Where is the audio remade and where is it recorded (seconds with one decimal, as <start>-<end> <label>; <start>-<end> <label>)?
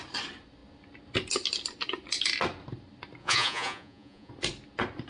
0.0-3.2 recorded; 3.2-4.3 remade; 4.3-5.1 recorded